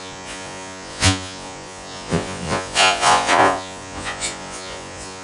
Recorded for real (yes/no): no